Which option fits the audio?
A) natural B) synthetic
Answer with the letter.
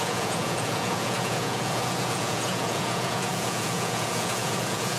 B